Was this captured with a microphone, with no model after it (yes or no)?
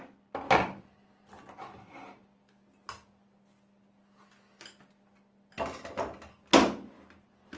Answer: yes